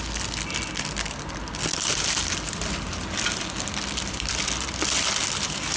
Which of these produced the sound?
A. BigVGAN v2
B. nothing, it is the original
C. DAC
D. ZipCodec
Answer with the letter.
B